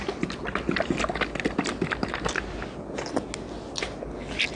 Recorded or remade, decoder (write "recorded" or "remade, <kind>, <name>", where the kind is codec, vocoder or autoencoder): recorded